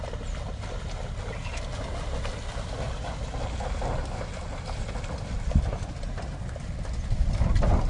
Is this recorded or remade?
recorded